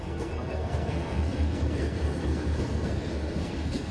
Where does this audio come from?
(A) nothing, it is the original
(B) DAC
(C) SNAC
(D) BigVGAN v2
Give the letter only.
C